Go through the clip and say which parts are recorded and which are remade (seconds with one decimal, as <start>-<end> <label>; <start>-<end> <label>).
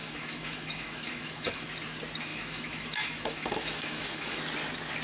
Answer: 0.0-1.6 remade; 1.6-2.3 recorded; 2.3-4.4 remade; 4.4-5.0 recorded